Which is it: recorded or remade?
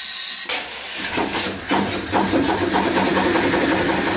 recorded